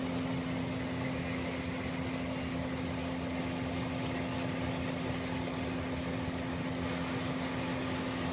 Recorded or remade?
recorded